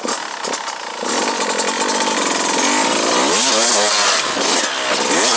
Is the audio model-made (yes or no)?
no